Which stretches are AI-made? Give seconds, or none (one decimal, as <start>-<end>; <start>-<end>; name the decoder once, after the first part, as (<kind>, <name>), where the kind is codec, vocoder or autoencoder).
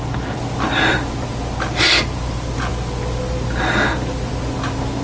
none